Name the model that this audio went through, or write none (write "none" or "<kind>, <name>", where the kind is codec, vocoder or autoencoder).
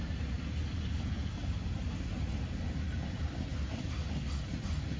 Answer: none